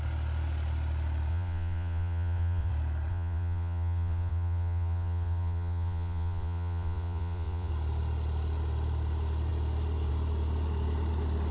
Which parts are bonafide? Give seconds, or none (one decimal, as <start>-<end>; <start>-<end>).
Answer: 0.0-1.3; 2.7-3.1; 7.7-11.5